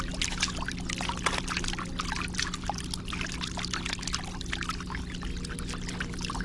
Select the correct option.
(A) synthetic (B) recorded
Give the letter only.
B